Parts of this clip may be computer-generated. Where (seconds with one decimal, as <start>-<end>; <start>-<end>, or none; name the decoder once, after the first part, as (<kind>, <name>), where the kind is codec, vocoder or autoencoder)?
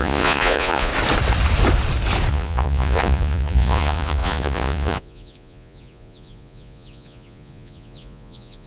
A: 0.0-0.9 (vocoder, Vocos); 2.3-8.7